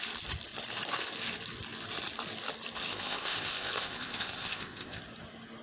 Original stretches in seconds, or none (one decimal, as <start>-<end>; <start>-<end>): 0.0-2.9; 5.0-5.6